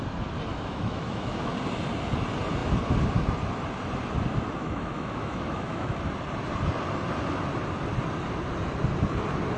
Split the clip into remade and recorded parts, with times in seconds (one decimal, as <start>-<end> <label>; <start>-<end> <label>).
0.0-0.5 recorded; 0.5-1.5 remade; 1.5-4.6 recorded; 4.6-6.0 remade; 6.0-9.6 recorded